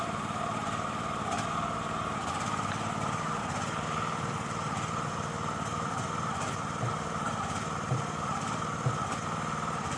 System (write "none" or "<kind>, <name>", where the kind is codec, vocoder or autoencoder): vocoder, BigVGAN v2